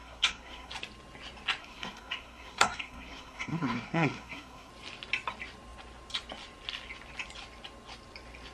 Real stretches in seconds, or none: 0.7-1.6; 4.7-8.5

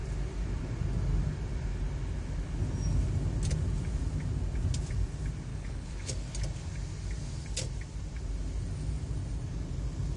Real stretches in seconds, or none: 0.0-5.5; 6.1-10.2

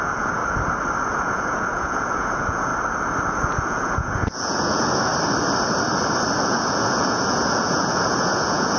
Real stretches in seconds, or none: 0.4-1.0; 2.7-3.3; 5.1-6.4

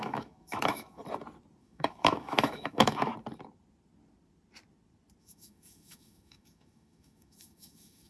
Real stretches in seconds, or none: 1.0-1.6; 3.1-5.2